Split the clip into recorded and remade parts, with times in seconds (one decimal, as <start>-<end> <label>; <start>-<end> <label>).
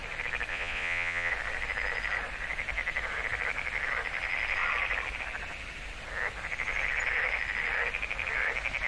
0.0-0.5 recorded; 0.5-1.3 remade; 1.3-8.9 recorded